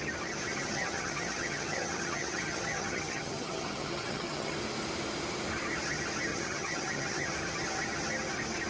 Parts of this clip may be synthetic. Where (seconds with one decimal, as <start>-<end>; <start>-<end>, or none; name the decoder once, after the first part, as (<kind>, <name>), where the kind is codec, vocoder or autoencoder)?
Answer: 0.5-4.5 (vocoder, HiFi-GAN); 6.3-7.3

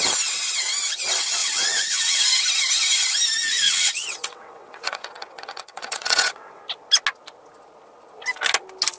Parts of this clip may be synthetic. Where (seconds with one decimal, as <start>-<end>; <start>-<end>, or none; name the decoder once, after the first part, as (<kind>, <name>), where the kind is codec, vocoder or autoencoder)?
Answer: 1.4-2.2 (vocoder, WaveNeXt); 3.4-6.6

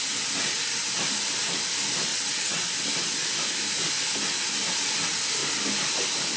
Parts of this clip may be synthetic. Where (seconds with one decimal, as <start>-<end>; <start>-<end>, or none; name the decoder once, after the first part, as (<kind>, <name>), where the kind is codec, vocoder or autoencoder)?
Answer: 2.1-2.7 (vocoder, WaveNeXt)

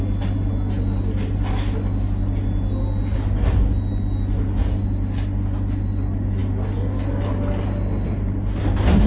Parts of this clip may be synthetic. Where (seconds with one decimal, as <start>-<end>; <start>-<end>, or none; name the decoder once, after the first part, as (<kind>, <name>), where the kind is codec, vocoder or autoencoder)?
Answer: none

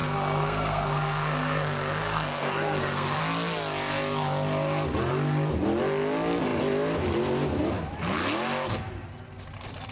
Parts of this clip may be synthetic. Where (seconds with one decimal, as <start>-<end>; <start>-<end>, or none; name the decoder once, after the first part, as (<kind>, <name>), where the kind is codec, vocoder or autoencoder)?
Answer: 0.0-3.2 (codec, SNAC)